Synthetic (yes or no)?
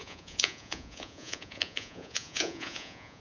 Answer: yes